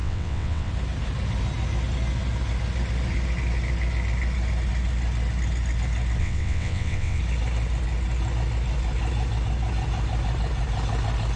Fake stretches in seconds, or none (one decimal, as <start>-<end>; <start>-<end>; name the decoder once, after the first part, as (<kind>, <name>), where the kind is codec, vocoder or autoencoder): 0.0-0.7 (vocoder, WaveNeXt); 6.2-7.2